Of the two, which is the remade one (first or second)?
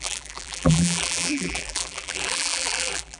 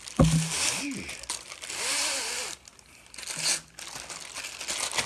first